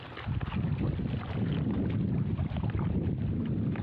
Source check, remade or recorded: recorded